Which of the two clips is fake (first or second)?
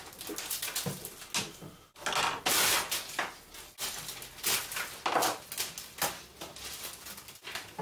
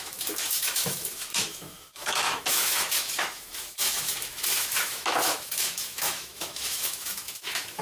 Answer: second